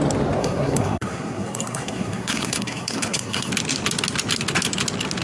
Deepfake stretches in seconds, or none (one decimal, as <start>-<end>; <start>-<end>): 0.4-3.5